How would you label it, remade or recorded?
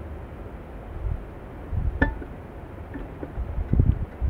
recorded